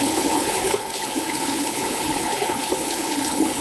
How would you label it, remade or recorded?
remade